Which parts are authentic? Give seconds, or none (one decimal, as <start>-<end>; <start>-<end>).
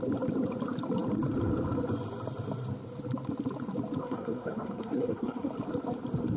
0.0-4.0; 5.5-6.4